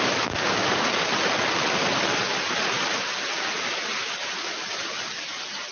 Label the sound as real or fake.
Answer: real